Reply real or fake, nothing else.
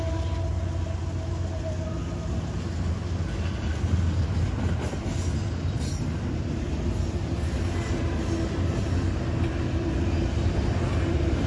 real